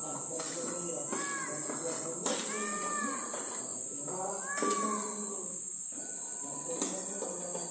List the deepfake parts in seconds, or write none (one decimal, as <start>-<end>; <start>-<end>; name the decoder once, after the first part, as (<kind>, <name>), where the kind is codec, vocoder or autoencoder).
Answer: none